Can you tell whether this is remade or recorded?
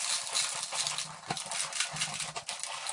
recorded